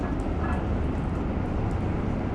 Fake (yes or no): no